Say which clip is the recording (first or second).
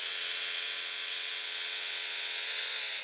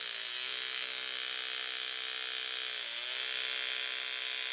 second